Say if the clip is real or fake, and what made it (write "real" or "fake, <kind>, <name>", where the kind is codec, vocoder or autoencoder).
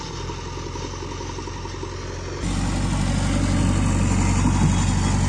real